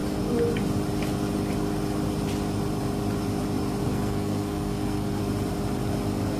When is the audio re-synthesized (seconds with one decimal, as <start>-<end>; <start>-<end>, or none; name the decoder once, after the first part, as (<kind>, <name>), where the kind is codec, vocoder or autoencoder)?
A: 3.8-5.2 (codec, SNAC)